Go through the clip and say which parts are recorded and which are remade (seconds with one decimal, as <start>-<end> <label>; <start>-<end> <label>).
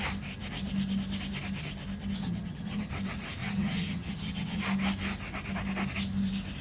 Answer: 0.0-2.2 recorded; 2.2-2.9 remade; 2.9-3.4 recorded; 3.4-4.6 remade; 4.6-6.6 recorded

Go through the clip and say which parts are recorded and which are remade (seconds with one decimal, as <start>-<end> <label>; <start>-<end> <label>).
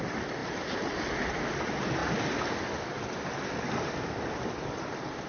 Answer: 0.0-5.3 recorded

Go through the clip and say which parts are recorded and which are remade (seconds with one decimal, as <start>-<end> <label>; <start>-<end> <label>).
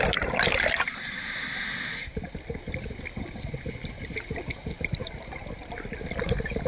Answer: 0.0-6.7 recorded